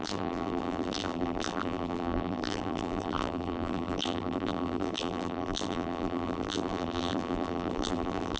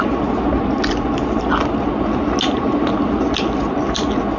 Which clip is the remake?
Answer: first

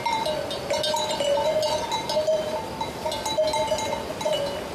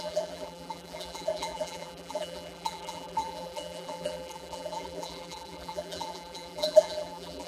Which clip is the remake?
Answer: second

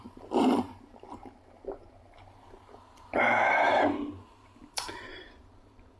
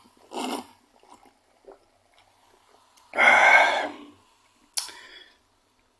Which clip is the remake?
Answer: first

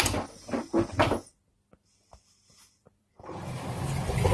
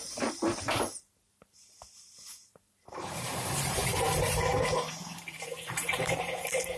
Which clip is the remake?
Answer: second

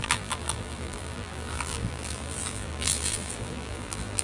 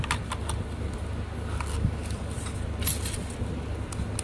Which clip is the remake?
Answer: first